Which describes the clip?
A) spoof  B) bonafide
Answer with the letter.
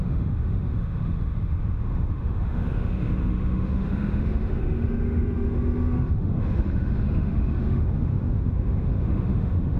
A